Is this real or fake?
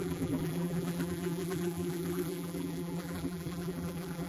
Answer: fake